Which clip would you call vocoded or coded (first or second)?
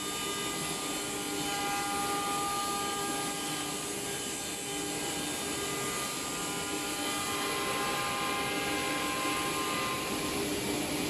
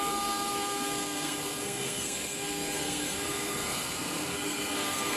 second